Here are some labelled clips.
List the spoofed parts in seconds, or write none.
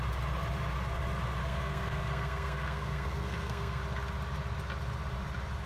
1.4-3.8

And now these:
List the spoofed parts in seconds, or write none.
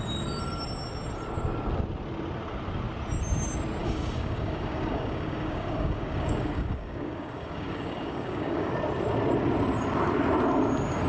3.8-8.7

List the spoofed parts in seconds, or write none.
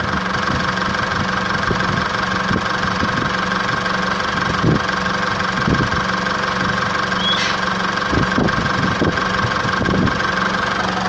none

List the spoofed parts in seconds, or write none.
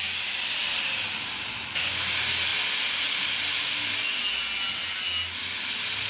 none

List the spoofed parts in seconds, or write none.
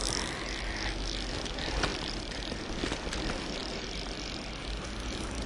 1.9-2.8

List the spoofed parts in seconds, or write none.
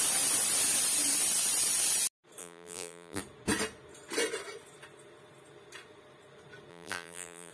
2.4-3.2; 6.7-7.5